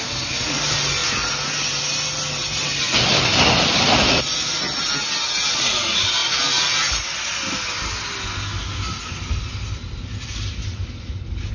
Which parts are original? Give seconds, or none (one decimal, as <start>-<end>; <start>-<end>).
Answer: 0.0-11.5